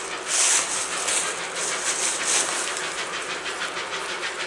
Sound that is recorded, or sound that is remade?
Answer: recorded